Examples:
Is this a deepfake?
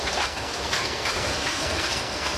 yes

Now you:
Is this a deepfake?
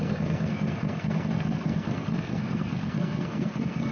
yes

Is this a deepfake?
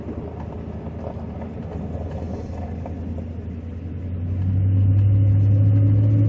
no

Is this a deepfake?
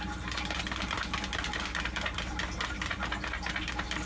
no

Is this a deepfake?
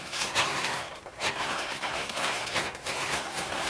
yes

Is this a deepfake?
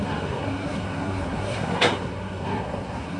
yes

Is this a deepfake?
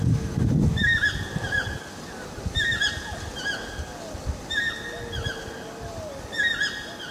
no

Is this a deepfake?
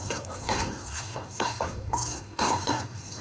yes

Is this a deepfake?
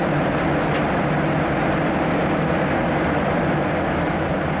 no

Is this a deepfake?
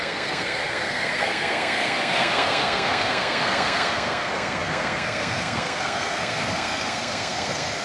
yes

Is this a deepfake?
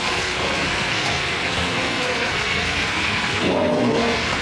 yes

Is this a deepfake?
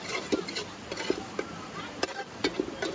no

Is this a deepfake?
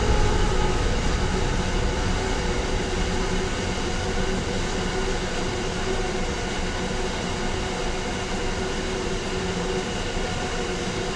no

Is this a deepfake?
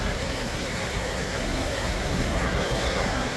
yes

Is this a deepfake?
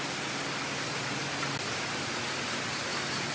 no